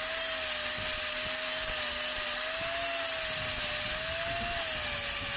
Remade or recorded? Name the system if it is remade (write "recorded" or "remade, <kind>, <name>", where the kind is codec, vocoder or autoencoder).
recorded